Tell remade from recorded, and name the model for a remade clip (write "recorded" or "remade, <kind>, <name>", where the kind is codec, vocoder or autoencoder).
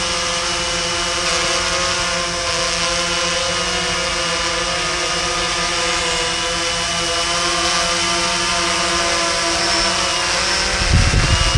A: recorded